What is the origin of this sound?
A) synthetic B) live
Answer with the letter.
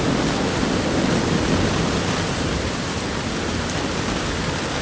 B